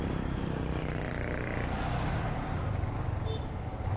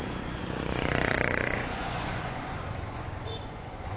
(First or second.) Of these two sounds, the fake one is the second